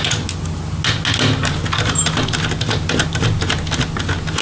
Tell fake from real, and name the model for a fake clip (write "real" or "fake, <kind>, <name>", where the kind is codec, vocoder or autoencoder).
real